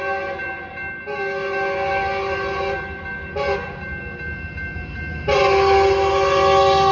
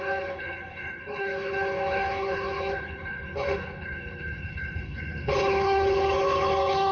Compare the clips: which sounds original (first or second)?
first